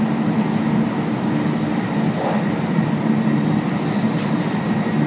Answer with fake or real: real